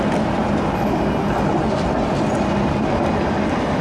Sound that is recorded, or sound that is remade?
recorded